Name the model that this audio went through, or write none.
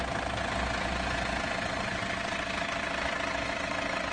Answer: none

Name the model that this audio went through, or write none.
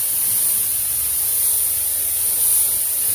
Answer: none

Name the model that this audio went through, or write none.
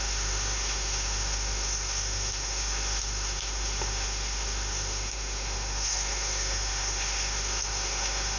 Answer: autoencoder, DAC-VAE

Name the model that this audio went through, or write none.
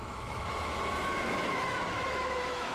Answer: autoencoder, DAC-VAE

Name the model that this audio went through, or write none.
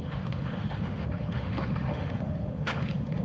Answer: autoencoder, DAC-VAE